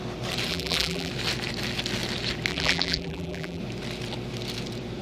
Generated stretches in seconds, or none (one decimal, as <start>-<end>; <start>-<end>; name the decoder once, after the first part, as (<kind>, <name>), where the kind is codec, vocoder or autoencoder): 0.5-1.1 (vocoder, BigVGAN v2); 2.5-3.6